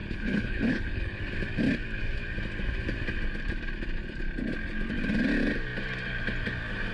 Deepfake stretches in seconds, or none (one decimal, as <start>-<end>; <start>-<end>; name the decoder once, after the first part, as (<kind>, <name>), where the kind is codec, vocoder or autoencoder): 0.0-1.2 (codec, HILCodec)